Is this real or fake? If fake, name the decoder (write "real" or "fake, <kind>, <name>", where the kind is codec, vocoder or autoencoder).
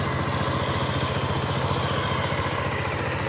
real